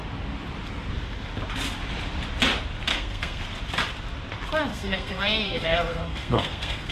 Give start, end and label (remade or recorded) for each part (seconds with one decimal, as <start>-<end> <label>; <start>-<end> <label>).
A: 0.0-2.9 recorded; 2.9-3.4 remade; 3.4-4.7 recorded; 4.7-6.9 remade